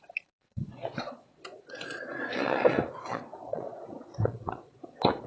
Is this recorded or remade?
remade